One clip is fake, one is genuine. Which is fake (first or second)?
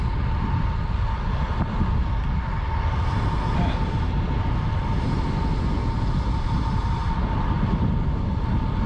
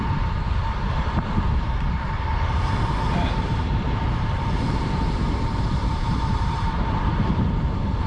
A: second